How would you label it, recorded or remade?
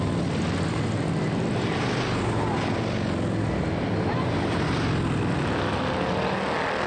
recorded